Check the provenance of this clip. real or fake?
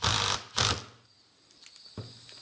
real